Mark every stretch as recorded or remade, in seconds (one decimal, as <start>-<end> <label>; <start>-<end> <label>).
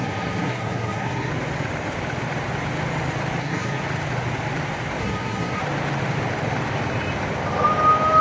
0.0-1.3 remade; 1.3-3.4 recorded; 3.4-3.8 remade; 3.8-5.0 recorded; 5.0-5.6 remade; 5.6-8.2 recorded